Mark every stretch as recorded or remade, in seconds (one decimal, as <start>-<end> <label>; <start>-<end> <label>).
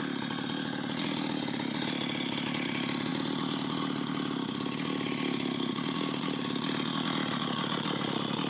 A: 0.0-8.5 recorded